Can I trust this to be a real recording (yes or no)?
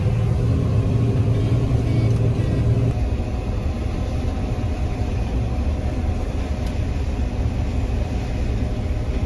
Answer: yes